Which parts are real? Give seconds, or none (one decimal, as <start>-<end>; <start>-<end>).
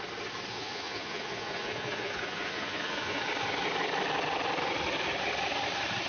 0.0-0.5; 3.2-6.1